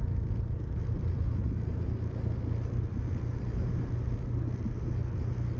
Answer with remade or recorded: recorded